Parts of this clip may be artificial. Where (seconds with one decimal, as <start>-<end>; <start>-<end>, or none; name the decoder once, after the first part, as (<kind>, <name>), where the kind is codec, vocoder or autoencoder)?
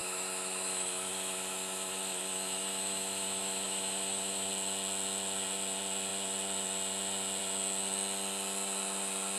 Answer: 0.0-4.5 (autoencoder, DAC-VAE)